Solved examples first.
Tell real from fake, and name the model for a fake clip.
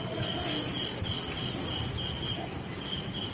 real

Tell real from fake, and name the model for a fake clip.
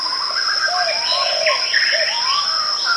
real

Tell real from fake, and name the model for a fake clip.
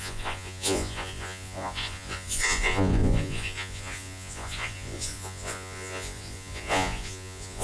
fake, vocoder, Vocos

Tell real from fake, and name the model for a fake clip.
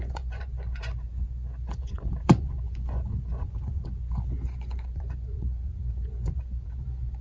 fake, vocoder, Vocos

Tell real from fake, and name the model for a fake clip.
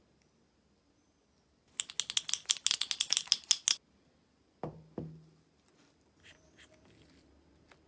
real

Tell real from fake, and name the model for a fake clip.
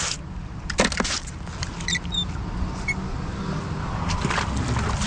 real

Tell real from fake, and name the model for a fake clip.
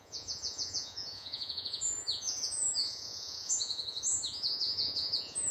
fake, vocoder, Vocos